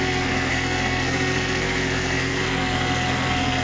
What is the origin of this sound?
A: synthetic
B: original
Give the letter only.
A